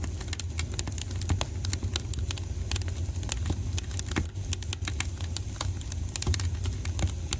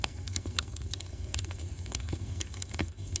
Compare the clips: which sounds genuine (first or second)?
first